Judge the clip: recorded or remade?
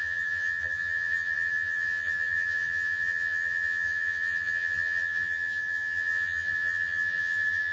remade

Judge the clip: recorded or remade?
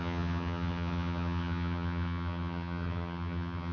remade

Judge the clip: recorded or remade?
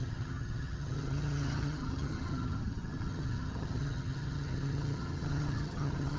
remade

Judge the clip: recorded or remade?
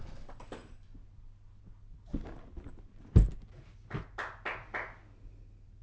recorded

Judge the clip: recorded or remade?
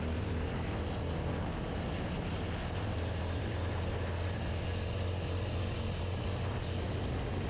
recorded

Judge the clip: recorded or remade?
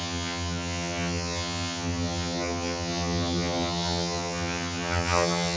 remade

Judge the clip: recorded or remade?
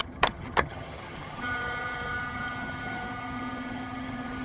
remade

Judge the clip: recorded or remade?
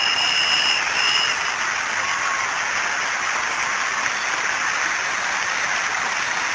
recorded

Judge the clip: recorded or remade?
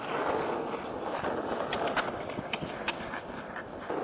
recorded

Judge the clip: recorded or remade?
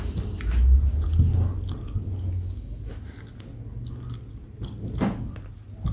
recorded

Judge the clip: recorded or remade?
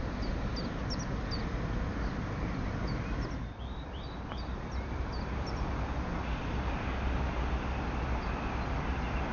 recorded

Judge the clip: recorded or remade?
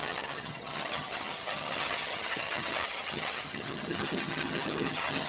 remade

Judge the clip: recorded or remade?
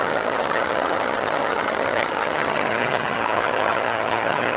remade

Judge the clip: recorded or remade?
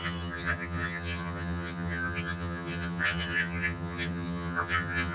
remade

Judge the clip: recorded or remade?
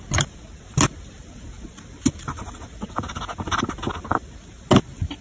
recorded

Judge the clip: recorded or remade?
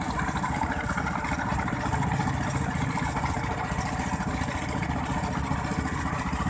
recorded